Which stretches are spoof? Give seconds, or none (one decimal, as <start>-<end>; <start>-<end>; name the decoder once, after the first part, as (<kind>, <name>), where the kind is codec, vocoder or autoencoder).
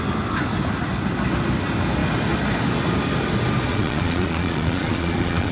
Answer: 3.7-5.5 (vocoder, Vocos)